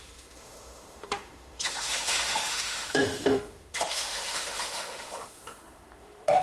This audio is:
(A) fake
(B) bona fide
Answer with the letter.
A